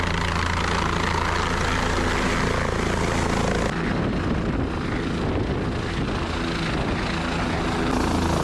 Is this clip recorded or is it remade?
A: recorded